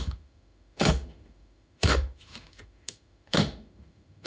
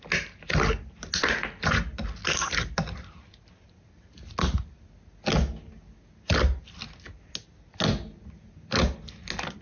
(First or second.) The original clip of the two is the second